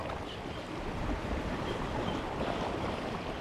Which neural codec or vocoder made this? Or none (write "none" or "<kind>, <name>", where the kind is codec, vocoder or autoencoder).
vocoder, BigVGAN v2